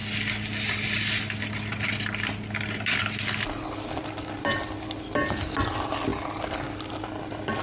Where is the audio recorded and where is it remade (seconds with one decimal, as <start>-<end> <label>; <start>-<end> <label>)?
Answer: 0.0-7.6 recorded